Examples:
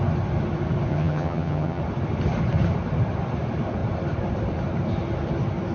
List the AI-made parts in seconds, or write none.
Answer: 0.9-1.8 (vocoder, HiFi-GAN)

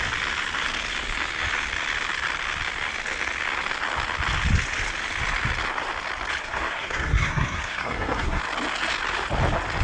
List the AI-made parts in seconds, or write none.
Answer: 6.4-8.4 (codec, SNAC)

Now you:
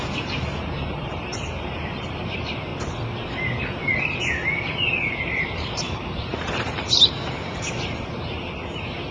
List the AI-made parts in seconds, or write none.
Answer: 0.0-2.7 (vocoder, BigVGAN v2); 5.1-9.1